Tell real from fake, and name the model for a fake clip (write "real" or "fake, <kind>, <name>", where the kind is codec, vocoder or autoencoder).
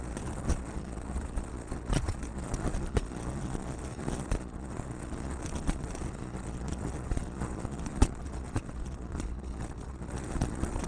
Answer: fake, vocoder, Vocos